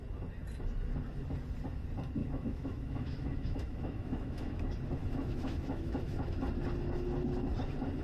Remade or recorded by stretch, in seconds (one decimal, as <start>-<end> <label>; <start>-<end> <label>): 0.0-2.2 recorded; 2.2-4.6 remade; 4.6-5.0 recorded; 5.0-6.4 remade; 6.4-8.0 recorded